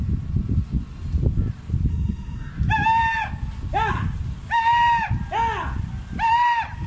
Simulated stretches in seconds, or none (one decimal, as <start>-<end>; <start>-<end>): 1.9-2.5